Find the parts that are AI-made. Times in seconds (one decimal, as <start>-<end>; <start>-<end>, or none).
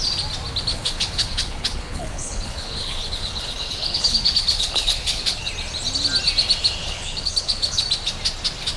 0.7-5.5; 6.8-7.8